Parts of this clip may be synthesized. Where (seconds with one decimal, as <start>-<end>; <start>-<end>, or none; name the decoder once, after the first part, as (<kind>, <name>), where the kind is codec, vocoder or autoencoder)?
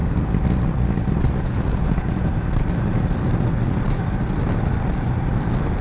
1.4-2.3 (vocoder, Vocos)